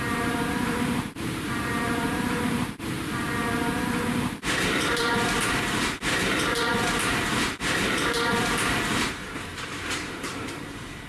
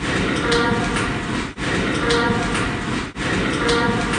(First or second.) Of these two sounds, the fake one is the first